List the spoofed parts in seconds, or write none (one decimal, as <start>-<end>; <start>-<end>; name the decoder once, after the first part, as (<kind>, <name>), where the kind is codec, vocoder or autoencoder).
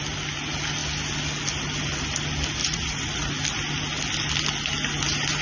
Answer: 2.6-3.3 (vocoder, Vocos)